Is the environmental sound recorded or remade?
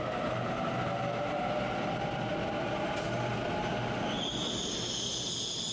recorded